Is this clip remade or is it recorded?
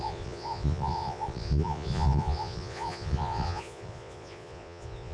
remade